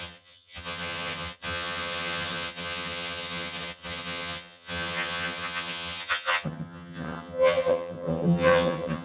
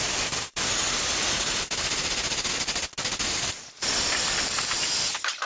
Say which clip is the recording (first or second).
second